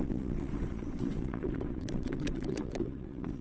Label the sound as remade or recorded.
remade